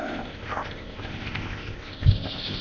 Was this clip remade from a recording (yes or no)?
yes